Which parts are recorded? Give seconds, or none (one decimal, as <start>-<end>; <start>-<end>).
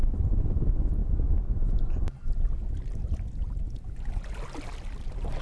0.0-5.4